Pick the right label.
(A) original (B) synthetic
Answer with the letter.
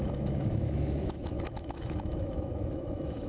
B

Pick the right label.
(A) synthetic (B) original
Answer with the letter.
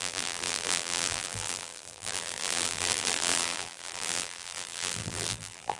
A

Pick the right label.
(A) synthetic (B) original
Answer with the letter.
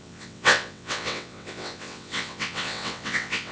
A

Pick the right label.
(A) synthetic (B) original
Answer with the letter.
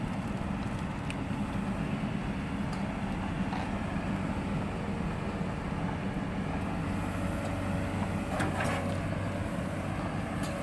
B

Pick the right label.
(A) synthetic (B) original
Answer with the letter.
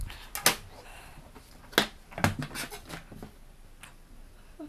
B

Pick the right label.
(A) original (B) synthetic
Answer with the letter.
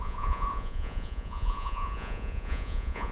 B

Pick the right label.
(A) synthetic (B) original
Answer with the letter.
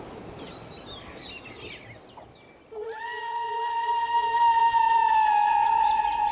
B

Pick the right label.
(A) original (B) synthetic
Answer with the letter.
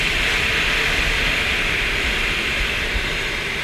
B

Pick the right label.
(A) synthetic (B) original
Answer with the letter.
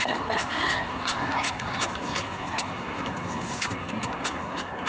A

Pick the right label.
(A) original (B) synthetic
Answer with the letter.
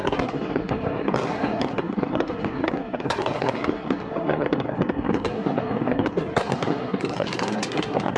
B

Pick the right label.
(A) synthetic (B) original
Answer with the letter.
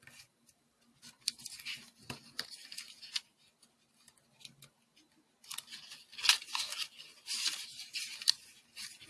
B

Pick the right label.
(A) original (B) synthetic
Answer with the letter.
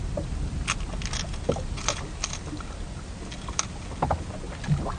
A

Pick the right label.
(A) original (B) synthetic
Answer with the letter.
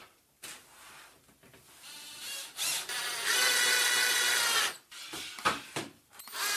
A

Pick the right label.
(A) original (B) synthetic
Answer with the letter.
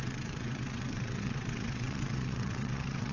B